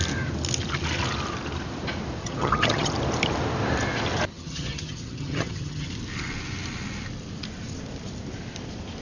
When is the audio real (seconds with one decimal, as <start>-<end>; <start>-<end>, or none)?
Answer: 0.0-2.2; 2.9-4.3; 5.9-9.0